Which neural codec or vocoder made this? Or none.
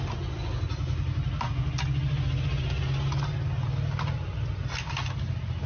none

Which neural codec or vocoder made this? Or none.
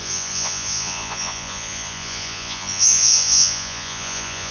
vocoder, Vocos